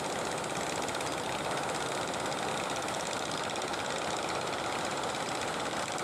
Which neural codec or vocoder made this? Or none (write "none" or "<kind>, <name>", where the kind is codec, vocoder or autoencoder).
none